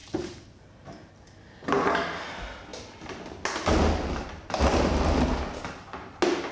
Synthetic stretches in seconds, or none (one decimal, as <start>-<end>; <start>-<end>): 0.0-1.1